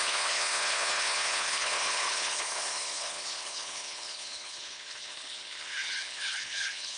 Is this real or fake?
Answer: fake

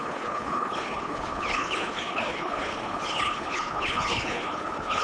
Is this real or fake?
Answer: fake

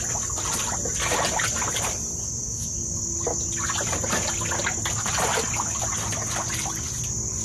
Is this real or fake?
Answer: real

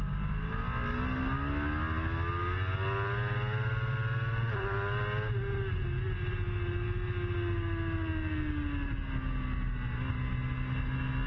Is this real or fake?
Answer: real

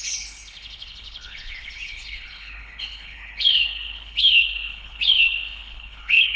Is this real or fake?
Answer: fake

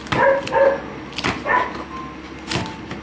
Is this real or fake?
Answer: real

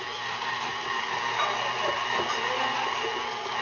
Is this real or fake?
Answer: real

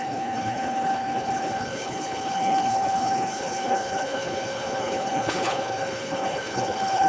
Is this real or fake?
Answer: fake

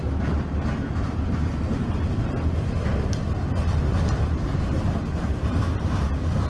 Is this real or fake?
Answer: real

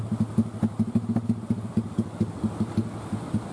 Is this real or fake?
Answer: real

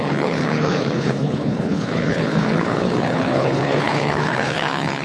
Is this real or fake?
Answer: fake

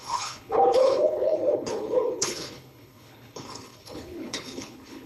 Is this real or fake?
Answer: fake